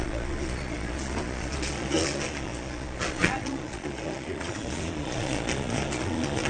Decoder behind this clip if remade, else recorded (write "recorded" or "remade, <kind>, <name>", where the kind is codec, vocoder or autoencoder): remade, vocoder, Vocos